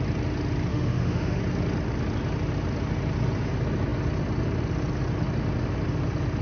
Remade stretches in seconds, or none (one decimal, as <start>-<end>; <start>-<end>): 0.7-1.4